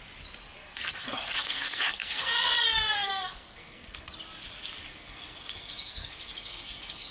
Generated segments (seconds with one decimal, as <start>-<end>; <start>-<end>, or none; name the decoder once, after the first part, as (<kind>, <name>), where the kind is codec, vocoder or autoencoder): 0.6-4.1 (codec, SNAC); 4.9-7.1